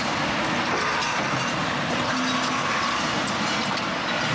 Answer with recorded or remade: recorded